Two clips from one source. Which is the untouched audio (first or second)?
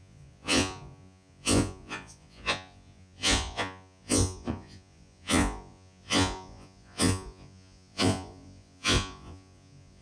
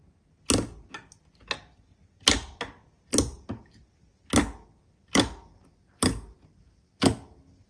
second